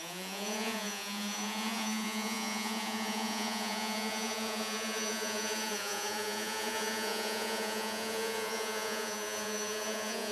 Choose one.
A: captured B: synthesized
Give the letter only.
B